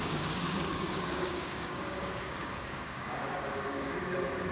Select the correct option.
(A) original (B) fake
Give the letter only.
B